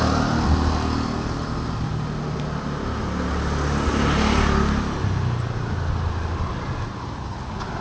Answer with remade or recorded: recorded